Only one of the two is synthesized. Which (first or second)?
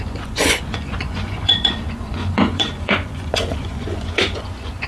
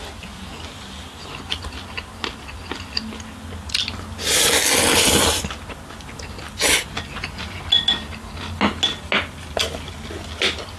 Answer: first